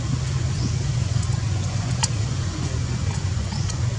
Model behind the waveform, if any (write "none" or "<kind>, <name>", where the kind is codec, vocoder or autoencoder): vocoder, Vocos